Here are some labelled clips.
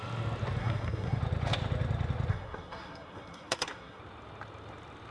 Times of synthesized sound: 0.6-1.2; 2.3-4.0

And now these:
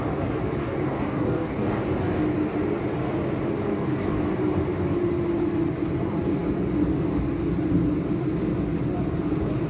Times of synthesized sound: 0.6-1.8; 3.7-4.2

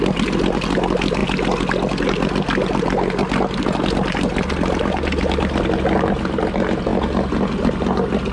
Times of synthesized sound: none